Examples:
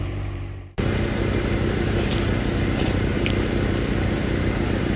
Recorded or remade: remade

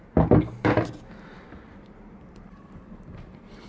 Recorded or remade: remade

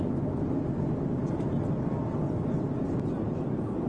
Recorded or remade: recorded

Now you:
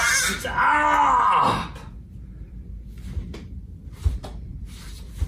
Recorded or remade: recorded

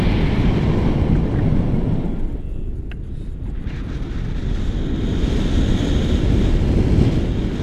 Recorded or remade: recorded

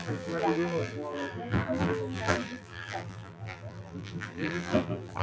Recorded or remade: remade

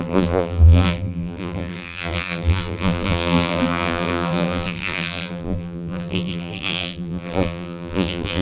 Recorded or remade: remade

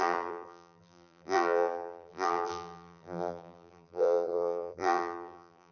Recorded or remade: remade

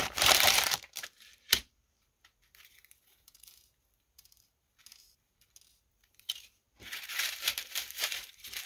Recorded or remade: remade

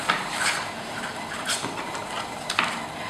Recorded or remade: remade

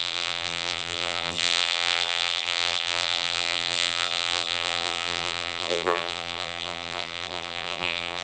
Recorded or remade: remade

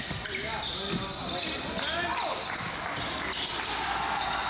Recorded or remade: recorded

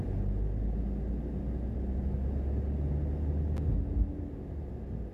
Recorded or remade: recorded